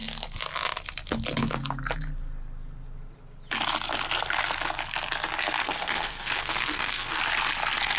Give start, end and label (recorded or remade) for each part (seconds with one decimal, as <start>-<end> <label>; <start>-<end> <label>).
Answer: 0.0-5.6 recorded; 5.6-7.2 remade; 7.2-8.0 recorded